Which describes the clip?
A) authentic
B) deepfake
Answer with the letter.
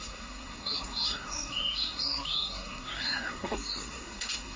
B